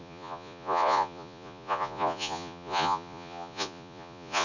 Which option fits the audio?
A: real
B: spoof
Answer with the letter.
B